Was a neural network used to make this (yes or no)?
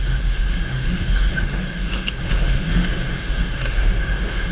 yes